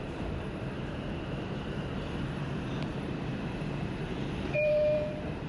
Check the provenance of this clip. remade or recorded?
remade